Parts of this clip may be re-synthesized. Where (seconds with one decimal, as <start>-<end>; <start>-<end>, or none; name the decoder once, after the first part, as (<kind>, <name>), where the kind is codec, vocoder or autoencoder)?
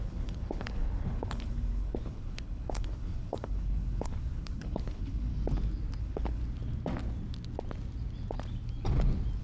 0.0-5.3 (codec, HILCodec); 6.0-6.4